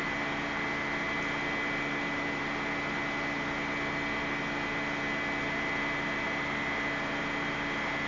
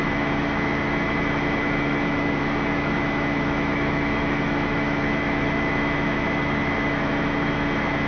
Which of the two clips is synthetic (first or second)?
second